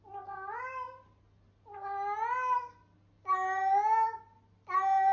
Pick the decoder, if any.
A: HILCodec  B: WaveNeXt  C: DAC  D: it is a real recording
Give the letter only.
D